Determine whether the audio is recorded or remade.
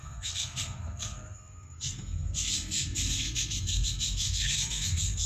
remade